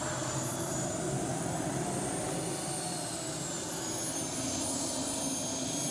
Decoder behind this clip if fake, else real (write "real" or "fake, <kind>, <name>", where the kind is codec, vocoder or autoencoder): real